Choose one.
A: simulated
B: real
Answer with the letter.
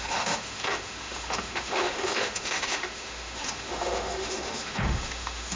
A